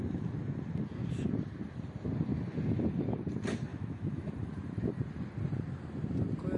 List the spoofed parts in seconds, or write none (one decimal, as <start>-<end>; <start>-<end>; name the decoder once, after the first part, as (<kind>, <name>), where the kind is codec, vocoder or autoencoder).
3.7-4.3 (autoencoder, DAC-VAE)

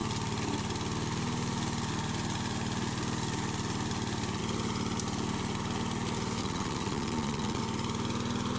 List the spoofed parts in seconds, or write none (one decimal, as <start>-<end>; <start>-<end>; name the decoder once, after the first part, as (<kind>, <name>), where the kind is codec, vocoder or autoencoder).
6.4-7.6 (vocoder, Vocos)

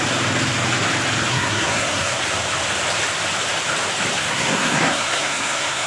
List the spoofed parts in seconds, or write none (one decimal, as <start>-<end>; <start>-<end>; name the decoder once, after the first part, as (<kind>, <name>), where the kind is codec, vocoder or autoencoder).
1.3-2.2 (codec, SNAC); 4.3-5.9

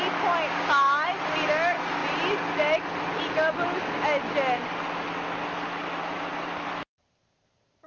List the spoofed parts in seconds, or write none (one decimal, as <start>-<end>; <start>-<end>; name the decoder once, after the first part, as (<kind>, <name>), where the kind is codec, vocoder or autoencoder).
6.0-7.9 (vocoder, BigVGAN v2)

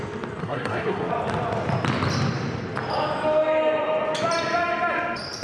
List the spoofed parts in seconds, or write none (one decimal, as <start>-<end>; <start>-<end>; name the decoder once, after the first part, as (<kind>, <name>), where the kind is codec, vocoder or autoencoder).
0.4-1.1 (codec, SNAC)

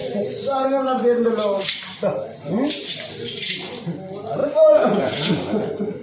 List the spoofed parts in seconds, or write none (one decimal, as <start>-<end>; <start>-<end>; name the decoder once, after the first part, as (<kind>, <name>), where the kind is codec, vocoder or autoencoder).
4.4-5.3 (vocoder, Vocos)

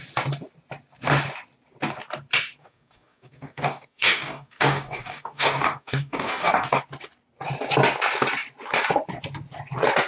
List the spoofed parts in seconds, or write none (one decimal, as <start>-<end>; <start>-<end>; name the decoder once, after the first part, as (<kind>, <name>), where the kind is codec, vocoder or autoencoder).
2.6-6.8 (codec, DAC)

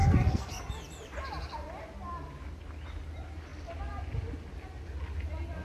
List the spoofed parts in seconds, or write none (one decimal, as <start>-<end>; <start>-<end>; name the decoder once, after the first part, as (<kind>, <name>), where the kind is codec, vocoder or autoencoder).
0.0-0.6 (codec, SNAC)